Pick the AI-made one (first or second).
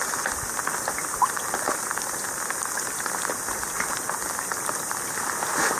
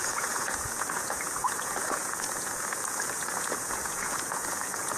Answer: second